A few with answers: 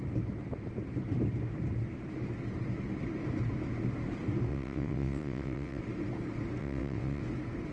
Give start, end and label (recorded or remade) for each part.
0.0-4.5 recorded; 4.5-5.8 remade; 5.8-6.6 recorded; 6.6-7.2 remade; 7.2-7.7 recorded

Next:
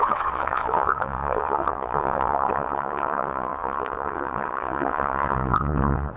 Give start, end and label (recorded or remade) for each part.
0.0-6.2 remade